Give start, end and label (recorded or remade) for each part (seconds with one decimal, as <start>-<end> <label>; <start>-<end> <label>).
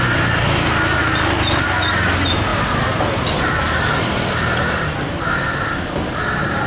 0.0-2.5 recorded; 2.5-4.3 remade; 4.3-6.7 recorded